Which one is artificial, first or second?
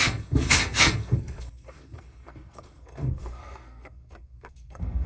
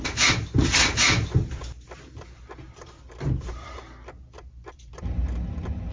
first